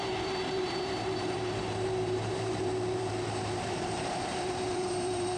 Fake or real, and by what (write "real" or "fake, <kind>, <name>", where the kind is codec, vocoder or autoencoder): fake, vocoder, BigVGAN v2